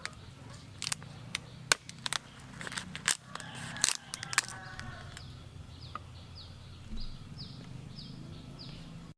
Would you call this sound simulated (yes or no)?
no